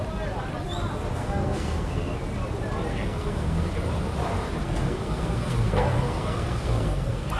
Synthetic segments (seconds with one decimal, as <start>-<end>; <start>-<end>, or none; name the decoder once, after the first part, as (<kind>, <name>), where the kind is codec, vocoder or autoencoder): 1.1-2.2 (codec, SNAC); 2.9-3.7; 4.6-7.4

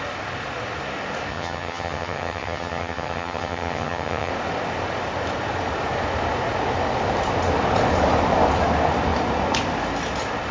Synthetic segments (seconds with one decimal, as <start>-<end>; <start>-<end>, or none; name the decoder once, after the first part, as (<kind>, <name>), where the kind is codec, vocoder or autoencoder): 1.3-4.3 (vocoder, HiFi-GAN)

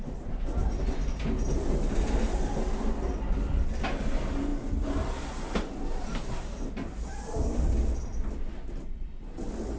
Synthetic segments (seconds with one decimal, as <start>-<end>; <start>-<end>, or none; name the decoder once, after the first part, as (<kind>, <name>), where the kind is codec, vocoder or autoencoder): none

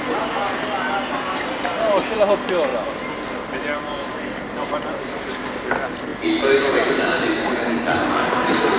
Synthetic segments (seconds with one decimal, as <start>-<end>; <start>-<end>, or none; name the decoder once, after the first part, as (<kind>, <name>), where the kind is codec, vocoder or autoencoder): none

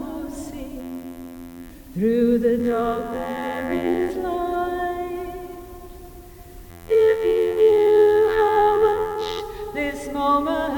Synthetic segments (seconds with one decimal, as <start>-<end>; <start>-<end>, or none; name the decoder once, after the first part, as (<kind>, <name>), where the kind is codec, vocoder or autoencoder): 0.8-1.7 (vocoder, BigVGAN v2); 2.6-4.1; 6.7-9.4

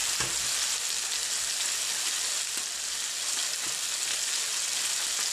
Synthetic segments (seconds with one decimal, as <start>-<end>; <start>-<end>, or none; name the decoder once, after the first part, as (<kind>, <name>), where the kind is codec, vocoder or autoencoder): none

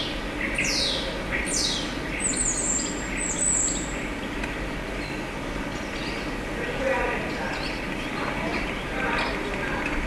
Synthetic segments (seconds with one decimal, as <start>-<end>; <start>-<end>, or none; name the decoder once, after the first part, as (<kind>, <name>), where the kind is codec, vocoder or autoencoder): none

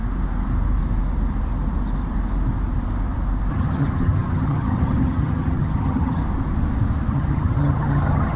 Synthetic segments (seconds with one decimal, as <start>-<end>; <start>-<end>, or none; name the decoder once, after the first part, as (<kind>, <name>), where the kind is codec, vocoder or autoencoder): 3.5-6.2 (vocoder, HiFi-GAN); 7.1-8.4